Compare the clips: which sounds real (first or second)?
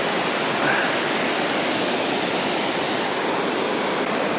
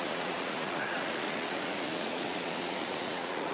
first